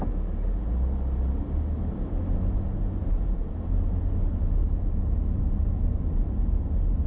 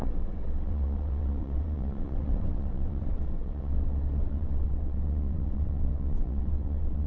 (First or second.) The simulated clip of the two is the second